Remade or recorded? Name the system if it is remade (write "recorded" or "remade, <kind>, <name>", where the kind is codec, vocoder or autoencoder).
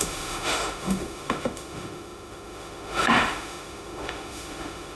remade, autoencoder, DAC-VAE